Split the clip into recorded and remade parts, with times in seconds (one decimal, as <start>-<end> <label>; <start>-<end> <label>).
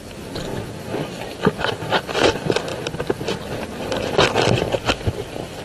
0.0-5.6 recorded